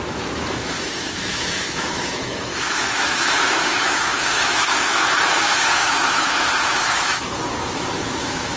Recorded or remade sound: remade